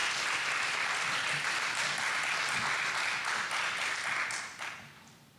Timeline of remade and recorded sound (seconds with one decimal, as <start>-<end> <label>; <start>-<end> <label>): 0.0-5.4 recorded